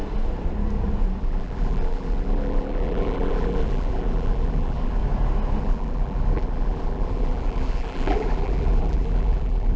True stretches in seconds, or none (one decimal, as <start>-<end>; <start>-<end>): 0.0-1.2; 5.0-5.6